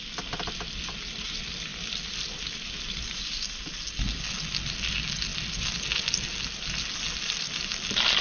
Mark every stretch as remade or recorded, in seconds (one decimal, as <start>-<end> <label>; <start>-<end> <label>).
0.0-8.2 recorded